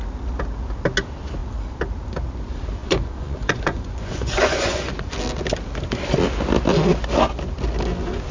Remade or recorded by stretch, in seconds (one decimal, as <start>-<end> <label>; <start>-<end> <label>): 0.0-2.8 recorded; 2.8-4.9 remade; 4.9-8.3 recorded